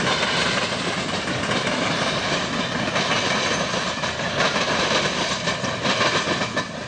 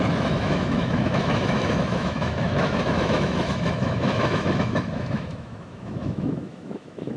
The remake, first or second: second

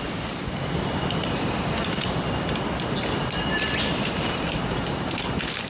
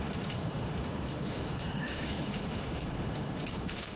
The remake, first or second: second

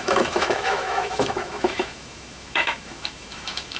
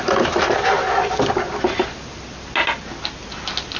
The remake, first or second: first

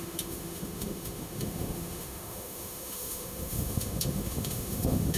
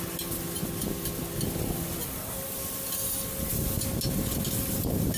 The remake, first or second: first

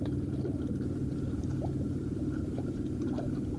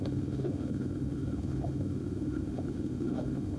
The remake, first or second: second